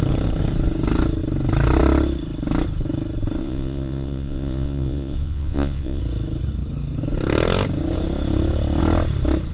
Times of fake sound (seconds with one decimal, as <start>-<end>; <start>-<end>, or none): 3.4-6.0